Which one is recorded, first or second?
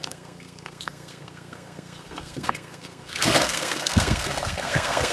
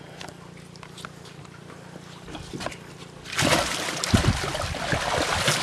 second